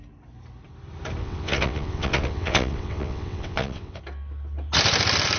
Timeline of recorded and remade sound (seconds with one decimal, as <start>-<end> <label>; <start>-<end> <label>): 0.0-1.2 recorded; 1.2-4.0 remade; 4.0-5.4 recorded